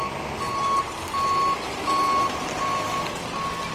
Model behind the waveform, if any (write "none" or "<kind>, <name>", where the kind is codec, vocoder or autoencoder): none